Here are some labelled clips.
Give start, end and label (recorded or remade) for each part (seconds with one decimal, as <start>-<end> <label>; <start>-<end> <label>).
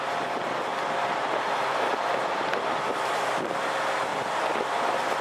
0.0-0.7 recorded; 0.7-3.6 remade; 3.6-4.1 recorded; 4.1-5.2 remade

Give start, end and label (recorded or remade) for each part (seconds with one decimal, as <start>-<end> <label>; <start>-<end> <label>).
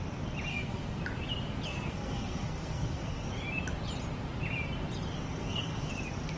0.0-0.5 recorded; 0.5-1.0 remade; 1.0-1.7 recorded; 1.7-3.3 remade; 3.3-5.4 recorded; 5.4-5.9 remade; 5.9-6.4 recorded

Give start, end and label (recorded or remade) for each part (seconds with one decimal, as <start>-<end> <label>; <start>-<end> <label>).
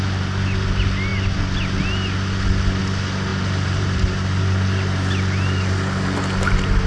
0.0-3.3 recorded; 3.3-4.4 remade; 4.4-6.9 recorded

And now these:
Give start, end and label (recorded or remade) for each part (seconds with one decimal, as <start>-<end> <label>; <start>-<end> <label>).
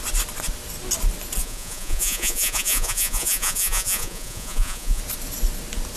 0.0-1.4 recorded; 1.4-5.0 remade; 5.0-6.0 recorded